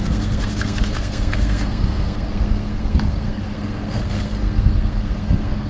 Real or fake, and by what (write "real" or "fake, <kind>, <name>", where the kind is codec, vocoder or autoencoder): fake, codec, SNAC